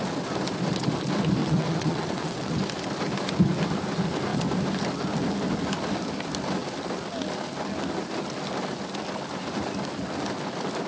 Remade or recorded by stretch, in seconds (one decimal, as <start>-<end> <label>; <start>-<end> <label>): 0.0-1.4 recorded; 1.4-2.6 remade; 2.6-10.9 recorded